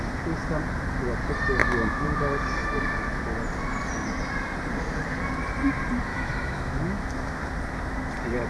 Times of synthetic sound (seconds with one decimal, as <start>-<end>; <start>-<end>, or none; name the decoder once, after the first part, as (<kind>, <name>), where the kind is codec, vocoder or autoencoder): 1.6-2.2 (autoencoder, DAC-VAE); 6.1-7.4